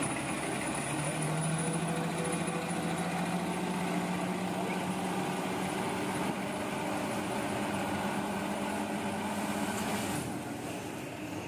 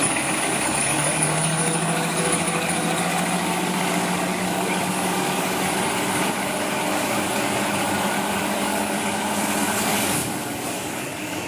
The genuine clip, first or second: first